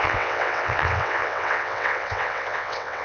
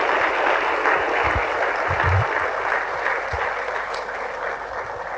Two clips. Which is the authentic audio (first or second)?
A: second